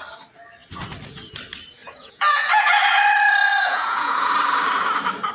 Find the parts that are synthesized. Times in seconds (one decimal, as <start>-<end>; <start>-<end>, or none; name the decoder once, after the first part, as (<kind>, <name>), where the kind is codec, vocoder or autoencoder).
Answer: 1.8-2.8 (vocoder, Vocos); 3.5-4.3